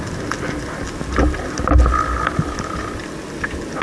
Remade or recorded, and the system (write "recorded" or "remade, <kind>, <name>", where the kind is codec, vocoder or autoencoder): recorded